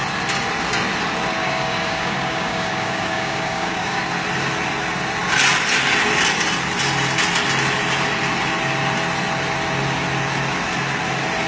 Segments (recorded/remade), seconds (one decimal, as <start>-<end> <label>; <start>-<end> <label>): 0.0-1.4 recorded; 1.4-4.0 remade; 4.0-11.5 recorded